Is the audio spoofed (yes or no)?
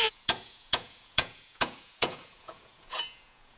yes